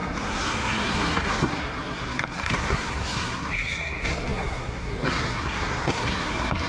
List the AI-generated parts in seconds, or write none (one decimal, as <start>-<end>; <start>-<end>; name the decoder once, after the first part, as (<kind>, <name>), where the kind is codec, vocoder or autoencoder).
0.0-6.7 (codec, SNAC)